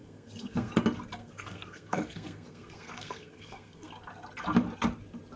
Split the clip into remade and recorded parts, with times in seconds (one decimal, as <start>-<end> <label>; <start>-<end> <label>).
0.0-0.7 remade; 0.7-1.2 recorded; 1.2-3.9 remade; 3.9-5.4 recorded

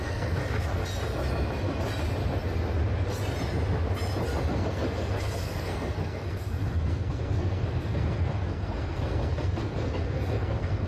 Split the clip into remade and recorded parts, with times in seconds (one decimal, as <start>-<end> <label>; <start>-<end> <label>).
0.0-0.8 remade; 0.8-4.5 recorded; 4.5-10.9 remade

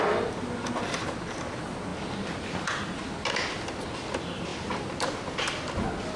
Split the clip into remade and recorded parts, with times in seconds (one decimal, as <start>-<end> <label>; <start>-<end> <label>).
0.0-6.2 recorded

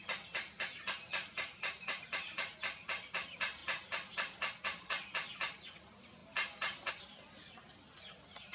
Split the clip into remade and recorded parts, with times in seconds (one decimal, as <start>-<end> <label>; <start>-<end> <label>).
0.0-8.5 recorded

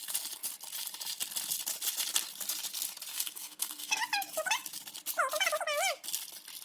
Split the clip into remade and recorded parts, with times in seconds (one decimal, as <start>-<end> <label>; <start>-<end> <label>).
0.0-3.1 recorded; 3.1-4.0 remade; 4.0-6.6 recorded

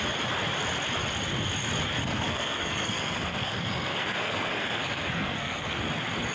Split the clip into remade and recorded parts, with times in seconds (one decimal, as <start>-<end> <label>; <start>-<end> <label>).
0.0-2.0 recorded; 2.0-5.8 remade; 5.8-6.3 recorded